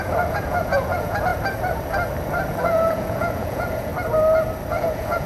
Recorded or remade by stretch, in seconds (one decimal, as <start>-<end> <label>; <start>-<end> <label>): 0.0-1.3 remade; 1.3-2.6 recorded; 2.6-3.9 remade; 3.9-4.7 recorded; 4.7-5.3 remade